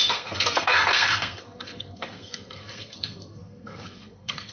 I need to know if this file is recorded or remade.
remade